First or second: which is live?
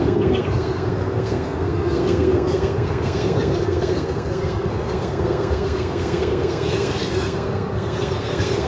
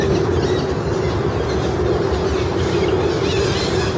second